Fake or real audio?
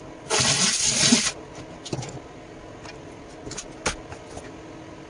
real